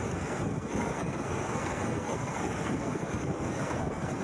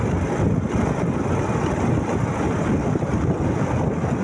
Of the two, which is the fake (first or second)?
first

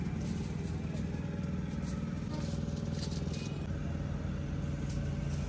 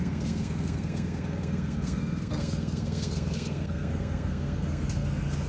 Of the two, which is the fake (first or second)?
second